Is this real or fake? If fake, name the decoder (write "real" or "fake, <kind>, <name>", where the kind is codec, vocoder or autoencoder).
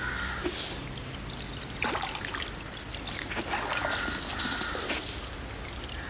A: real